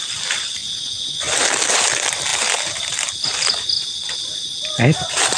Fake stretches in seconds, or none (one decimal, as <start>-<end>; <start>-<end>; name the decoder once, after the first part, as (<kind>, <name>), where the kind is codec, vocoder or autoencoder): 0.0-0.6 (vocoder, BigVGAN v2); 1.5-2.3; 4.3-5.4